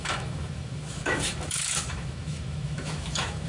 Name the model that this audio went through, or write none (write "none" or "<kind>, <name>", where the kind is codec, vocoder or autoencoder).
autoencoder, DAC-VAE